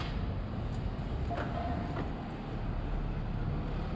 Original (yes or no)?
yes